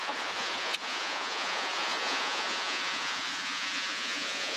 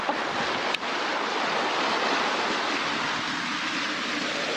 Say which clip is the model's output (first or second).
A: first